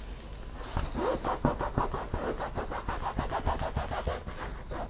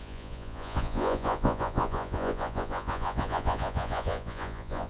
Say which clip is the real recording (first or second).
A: first